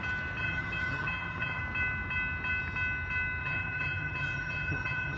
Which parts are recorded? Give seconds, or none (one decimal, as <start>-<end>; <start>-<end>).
0.0-0.4; 1.6-3.4